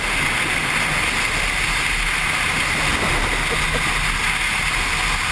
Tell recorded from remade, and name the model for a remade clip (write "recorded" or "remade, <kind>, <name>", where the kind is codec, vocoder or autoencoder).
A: recorded